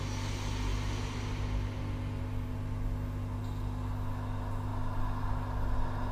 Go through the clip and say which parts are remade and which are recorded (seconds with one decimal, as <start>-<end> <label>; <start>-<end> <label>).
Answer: 0.0-6.1 recorded